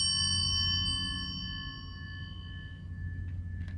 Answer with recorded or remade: recorded